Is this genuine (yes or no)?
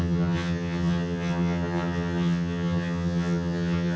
no